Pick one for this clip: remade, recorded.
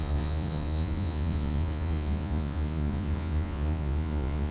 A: remade